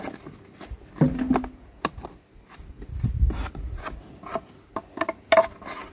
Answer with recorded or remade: recorded